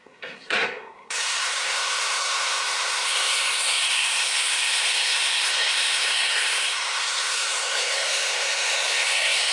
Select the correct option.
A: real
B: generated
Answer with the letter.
B